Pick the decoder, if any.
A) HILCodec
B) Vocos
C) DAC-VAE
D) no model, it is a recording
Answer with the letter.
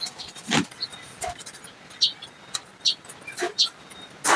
D